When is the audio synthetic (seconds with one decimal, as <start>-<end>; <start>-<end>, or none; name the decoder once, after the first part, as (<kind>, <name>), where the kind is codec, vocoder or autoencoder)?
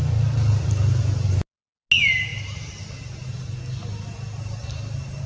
none